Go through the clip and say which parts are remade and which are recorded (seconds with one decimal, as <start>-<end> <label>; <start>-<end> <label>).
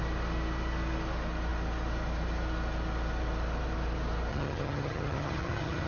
0.0-4.3 recorded; 4.3-5.9 remade